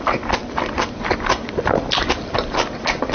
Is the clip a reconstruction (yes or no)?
yes